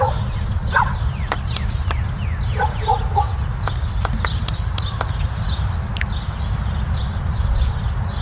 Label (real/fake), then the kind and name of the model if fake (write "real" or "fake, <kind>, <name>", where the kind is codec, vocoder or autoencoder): real